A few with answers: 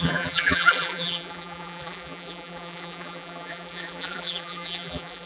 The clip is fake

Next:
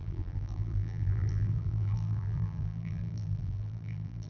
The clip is fake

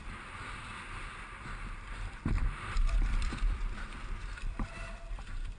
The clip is fake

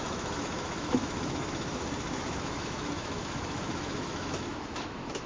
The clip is fake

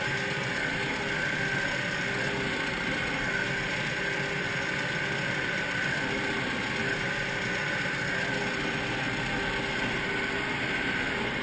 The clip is real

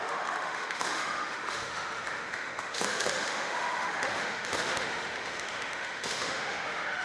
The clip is fake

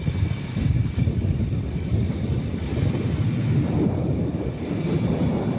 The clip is real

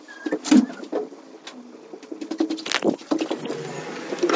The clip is real